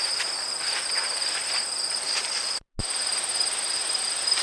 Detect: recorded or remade recorded